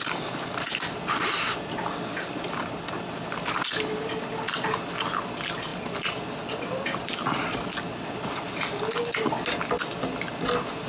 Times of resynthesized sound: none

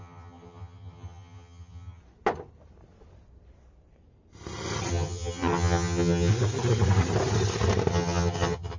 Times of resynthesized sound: 0.0-2.0 (vocoder, HiFi-GAN); 4.9-6.3; 7.9-8.8

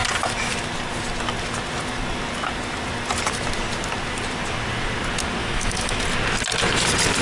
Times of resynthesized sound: 5.4-6.0 (autoencoder, DAC-VAE)